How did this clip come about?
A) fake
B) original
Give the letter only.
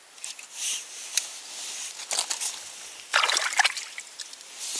B